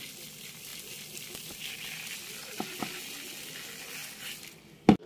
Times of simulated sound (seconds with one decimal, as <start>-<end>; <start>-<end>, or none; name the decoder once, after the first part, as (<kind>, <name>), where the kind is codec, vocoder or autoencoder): none